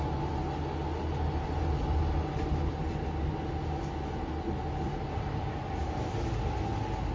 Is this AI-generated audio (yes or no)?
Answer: no